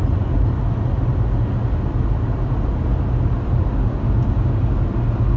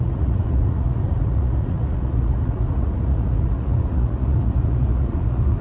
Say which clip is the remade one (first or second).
second